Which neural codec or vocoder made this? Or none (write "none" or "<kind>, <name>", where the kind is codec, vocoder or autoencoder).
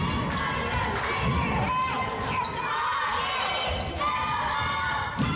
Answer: none